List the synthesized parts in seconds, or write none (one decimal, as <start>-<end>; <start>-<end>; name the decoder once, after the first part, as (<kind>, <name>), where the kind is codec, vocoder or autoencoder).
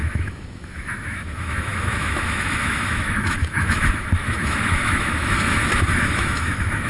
0.0-6.9 (autoencoder, DAC-VAE)